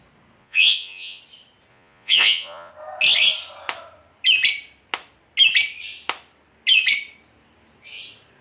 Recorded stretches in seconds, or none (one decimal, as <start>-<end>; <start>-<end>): 0.0-0.4; 1.2-1.7; 2.7-8.4